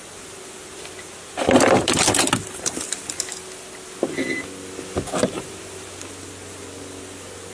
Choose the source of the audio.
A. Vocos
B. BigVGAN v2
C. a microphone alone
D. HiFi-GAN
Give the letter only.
C